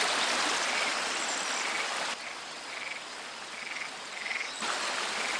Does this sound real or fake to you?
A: real